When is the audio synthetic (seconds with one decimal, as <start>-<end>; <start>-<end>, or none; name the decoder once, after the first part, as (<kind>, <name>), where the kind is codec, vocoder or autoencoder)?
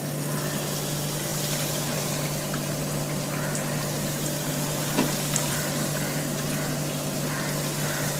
none